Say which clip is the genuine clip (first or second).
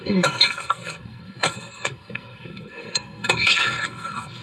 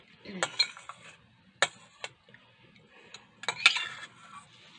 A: second